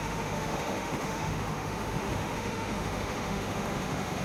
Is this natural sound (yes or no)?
no